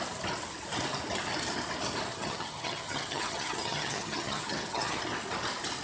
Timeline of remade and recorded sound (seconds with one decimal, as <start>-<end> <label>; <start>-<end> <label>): 0.0-2.1 recorded; 2.1-5.0 remade; 5.0-5.8 recorded